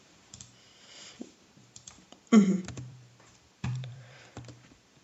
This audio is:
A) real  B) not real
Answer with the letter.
B